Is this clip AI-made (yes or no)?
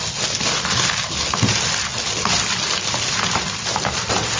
no